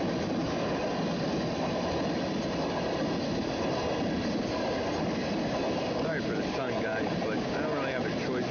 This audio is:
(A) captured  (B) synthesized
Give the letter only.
A